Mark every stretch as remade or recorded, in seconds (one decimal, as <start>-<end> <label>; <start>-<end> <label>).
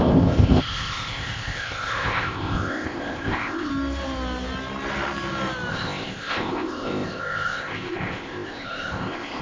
0.0-3.7 remade; 3.7-5.7 recorded; 5.7-9.4 remade